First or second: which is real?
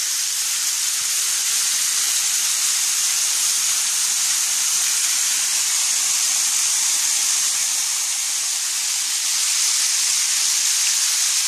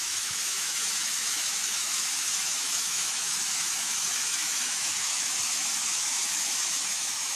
first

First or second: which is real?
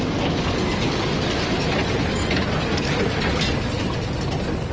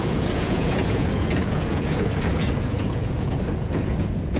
first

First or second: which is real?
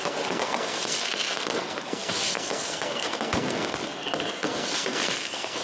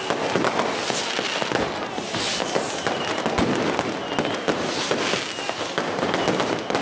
second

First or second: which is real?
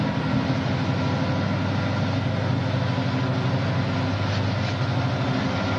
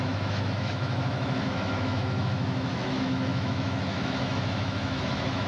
first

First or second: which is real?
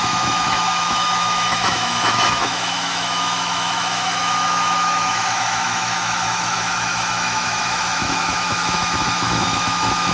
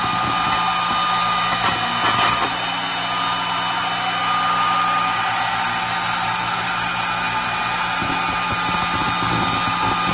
second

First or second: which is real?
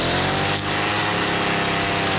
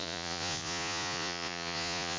first